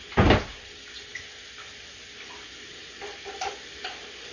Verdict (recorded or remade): recorded